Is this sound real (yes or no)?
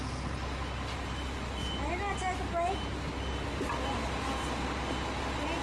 yes